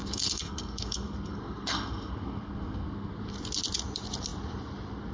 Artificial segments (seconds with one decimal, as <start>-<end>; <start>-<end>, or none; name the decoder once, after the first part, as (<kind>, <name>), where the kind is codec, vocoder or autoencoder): 0.0-3.1 (codec, SNAC)